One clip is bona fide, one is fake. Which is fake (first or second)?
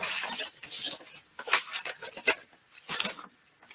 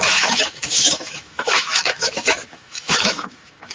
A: second